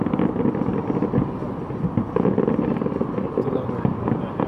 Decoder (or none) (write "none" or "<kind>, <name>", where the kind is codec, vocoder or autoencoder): none